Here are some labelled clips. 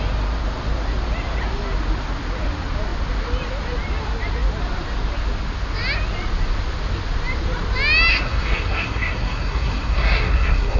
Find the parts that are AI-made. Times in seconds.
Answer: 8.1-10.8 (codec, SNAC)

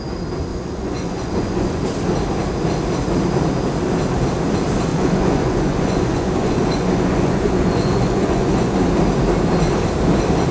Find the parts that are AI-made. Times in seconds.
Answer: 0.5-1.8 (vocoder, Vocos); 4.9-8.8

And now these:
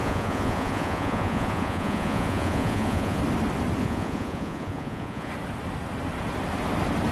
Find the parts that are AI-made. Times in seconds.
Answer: 0.0-3.2 (vocoder, Vocos); 3.8-5.3

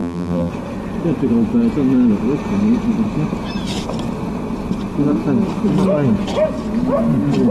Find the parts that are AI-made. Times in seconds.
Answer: 0.0-0.5 (vocoder, BigVGAN v2)